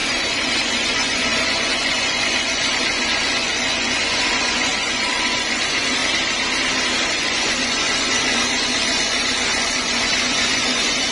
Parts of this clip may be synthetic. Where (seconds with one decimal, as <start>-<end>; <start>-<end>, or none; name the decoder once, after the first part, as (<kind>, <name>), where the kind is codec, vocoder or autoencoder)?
0.0-6.0 (vocoder, Vocos); 7.1-11.1